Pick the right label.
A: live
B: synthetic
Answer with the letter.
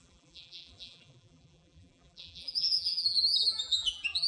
B